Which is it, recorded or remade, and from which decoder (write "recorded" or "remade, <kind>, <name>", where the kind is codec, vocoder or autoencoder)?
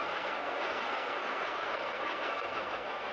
remade, codec, SNAC